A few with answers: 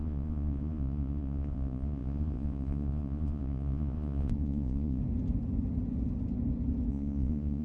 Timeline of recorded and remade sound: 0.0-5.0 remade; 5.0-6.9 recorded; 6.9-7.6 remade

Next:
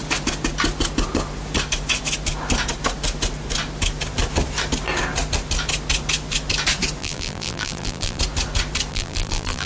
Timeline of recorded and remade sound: 0.0-7.0 recorded; 7.0-8.2 remade; 8.2-8.9 recorded; 8.9-9.7 remade